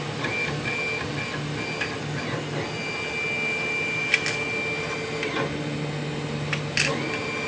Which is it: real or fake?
real